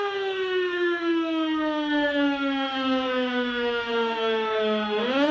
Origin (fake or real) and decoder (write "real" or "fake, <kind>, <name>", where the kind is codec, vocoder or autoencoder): fake, autoencoder, DAC-VAE